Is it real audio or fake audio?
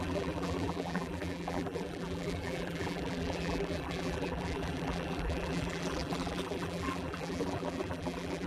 fake